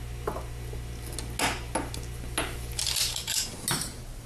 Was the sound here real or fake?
real